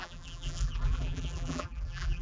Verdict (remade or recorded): remade